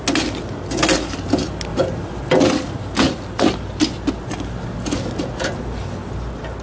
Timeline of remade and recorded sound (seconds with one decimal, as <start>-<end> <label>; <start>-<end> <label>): 0.0-6.6 recorded